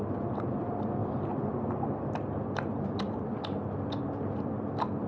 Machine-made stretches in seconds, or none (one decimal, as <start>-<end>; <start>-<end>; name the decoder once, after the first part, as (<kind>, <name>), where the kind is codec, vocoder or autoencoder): 1.0-1.8 (vocoder, BigVGAN v2)